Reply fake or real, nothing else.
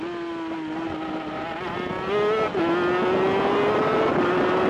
real